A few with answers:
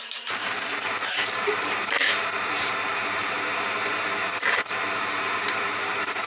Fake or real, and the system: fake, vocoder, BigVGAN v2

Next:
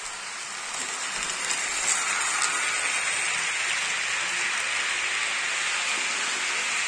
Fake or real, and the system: real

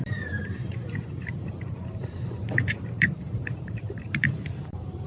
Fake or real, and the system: fake, vocoder, BigVGAN v2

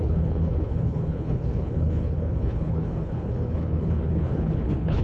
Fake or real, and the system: fake, codec, HILCodec